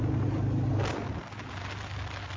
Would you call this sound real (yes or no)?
yes